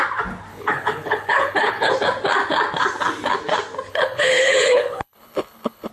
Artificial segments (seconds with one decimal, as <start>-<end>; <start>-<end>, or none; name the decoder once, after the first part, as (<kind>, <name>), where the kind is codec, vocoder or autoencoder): 0.5-1.9 (codec, HILCodec); 3.9-5.9